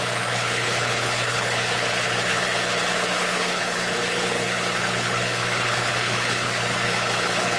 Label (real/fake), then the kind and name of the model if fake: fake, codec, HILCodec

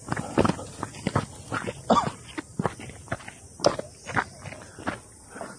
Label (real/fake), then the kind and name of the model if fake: real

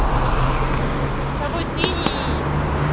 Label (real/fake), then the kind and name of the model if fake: real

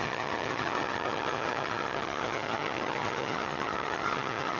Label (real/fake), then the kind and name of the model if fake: fake, vocoder, HiFi-GAN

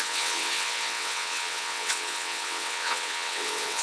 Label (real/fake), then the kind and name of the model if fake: fake, vocoder, WaveNeXt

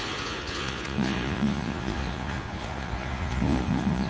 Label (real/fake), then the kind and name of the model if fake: fake, vocoder, Vocos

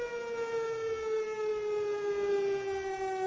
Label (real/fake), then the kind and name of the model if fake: real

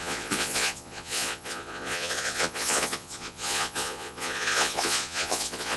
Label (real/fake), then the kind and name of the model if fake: fake, vocoder, Vocos